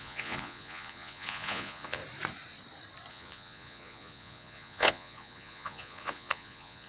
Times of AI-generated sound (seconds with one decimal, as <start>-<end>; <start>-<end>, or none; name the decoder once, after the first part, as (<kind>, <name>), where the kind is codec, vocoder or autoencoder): 0.0-2.0 (vocoder, Vocos); 3.1-6.9